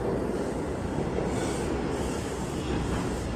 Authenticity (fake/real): real